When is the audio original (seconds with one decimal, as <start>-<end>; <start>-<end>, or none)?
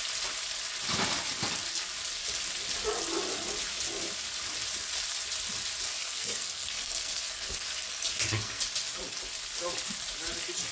0.0-6.0; 8.6-10.7